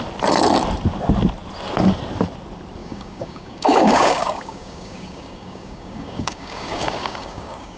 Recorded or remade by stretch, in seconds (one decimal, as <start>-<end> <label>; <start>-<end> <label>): 0.0-2.8 recorded; 2.8-7.8 remade